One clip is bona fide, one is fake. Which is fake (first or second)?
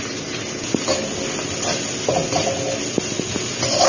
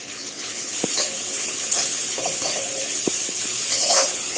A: second